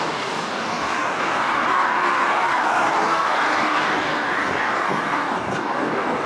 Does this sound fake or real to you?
fake